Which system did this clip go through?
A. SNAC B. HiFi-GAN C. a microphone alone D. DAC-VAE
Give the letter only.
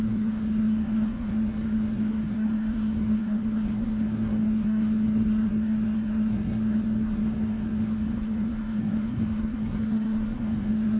A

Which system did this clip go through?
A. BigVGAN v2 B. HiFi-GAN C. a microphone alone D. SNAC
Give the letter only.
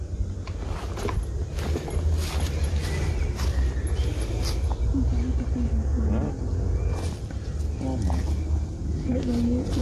C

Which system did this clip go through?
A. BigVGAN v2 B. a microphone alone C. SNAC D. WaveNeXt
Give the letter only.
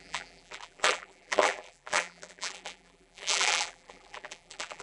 A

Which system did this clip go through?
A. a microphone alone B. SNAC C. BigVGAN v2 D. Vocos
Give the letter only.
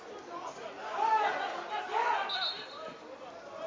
A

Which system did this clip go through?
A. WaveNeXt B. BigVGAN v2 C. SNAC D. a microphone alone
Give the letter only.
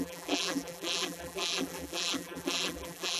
B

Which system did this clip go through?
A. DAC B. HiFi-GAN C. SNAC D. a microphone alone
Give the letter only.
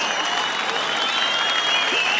D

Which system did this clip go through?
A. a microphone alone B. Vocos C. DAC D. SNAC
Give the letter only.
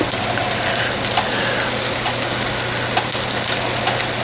A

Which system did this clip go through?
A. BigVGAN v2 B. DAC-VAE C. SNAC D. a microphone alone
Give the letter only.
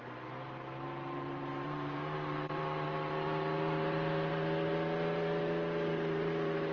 D